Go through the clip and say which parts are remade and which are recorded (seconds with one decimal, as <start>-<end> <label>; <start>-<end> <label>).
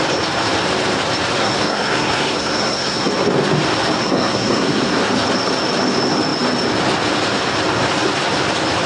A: 0.0-1.4 recorded; 1.4-3.1 remade; 3.1-4.0 recorded; 4.0-5.0 remade; 5.0-8.9 recorded